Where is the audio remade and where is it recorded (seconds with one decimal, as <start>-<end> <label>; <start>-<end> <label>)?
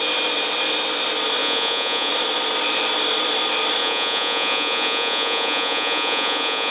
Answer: 0.0-1.4 recorded; 1.4-2.1 remade; 2.1-3.8 recorded; 3.8-6.7 remade